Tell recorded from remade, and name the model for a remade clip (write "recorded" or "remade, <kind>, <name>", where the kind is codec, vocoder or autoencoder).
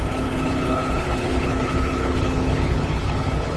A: remade, codec, HILCodec